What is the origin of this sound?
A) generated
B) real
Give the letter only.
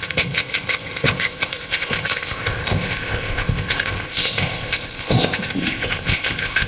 A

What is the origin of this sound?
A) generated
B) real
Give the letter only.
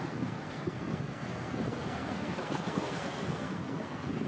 A